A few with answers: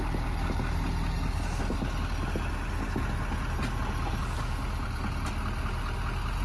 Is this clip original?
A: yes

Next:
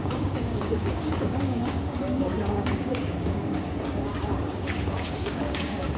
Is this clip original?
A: no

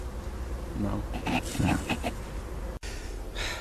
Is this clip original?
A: yes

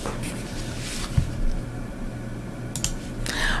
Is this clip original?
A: yes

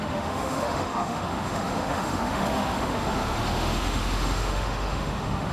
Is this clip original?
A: no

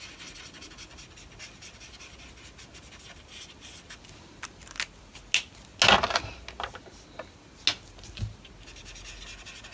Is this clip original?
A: yes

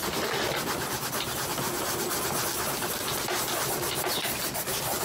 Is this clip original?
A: yes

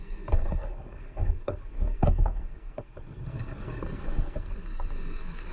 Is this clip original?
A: no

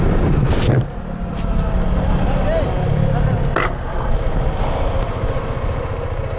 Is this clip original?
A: yes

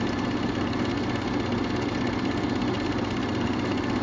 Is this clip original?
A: yes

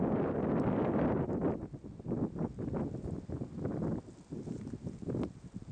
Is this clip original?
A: yes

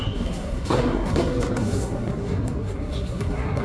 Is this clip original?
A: no